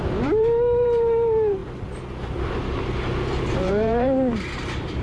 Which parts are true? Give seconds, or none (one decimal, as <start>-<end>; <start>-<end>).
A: 1.6-3.5